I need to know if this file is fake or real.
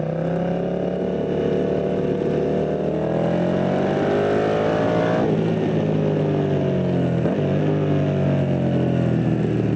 real